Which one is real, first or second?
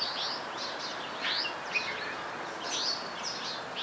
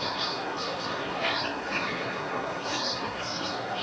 first